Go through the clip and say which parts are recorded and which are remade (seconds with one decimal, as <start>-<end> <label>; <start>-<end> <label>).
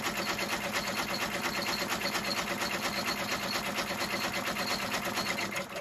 0.0-5.8 recorded